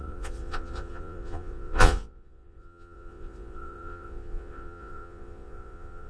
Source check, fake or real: fake